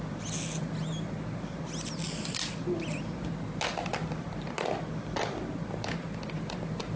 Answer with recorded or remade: recorded